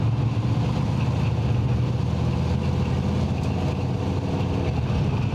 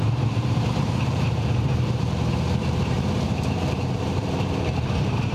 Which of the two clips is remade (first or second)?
second